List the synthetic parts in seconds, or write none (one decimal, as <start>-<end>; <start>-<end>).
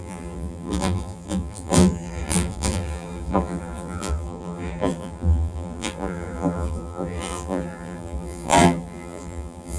0.0-9.8